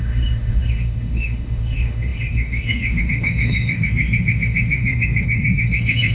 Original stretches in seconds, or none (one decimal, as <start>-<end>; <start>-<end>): none